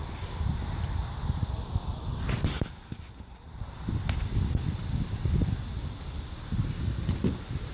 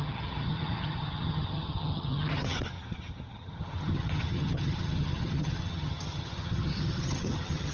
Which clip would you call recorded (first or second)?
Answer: first